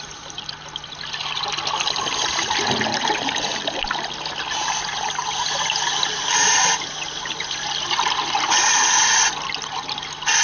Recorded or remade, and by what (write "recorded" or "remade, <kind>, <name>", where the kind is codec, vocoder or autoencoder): recorded